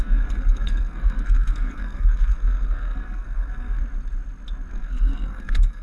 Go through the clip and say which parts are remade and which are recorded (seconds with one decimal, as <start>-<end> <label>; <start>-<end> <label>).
0.0-3.8 remade; 3.8-4.7 recorded; 4.7-5.8 remade